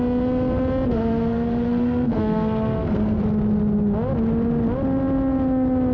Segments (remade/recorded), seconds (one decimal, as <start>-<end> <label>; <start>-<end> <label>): 0.0-0.9 recorded; 0.9-3.2 remade; 3.2-5.9 recorded